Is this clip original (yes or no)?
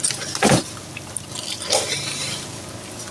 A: yes